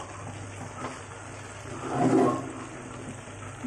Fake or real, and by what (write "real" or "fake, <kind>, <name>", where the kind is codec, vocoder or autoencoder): real